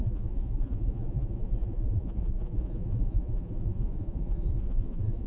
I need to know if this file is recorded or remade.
remade